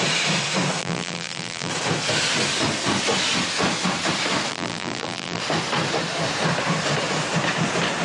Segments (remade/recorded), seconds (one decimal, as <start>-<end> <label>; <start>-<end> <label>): 0.0-0.8 recorded; 0.8-1.7 remade; 1.7-4.5 recorded; 4.5-5.4 remade; 5.4-8.0 recorded